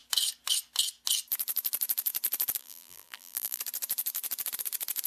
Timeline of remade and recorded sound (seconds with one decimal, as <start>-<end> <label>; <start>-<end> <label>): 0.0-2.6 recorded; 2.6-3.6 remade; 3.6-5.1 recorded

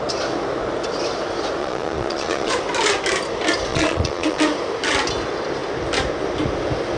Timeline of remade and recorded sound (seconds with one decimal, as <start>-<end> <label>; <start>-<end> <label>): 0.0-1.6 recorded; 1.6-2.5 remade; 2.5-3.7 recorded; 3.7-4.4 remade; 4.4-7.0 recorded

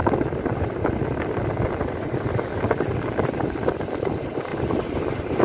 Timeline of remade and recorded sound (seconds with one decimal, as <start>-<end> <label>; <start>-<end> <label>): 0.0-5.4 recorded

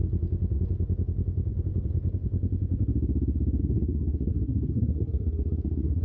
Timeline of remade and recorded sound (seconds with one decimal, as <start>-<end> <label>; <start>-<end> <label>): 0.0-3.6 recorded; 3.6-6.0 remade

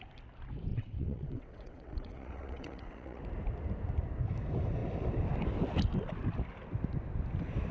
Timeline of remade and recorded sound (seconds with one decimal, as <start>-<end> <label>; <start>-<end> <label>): 0.0-0.7 recorded; 0.7-3.2 remade; 3.2-7.7 recorded

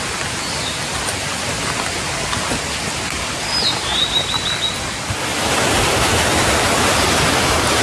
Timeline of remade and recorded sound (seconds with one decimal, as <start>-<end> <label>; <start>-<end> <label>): 0.0-7.8 recorded

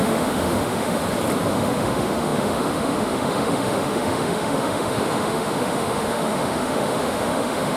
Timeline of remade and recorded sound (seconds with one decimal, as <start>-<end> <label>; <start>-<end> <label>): 0.0-1.0 remade; 1.0-1.5 recorded; 1.5-7.8 remade

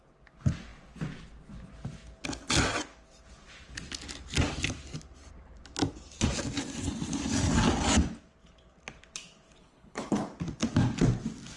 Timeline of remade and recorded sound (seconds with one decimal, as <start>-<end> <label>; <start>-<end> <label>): 0.0-9.6 recorded; 9.6-10.2 remade; 10.2-11.6 recorded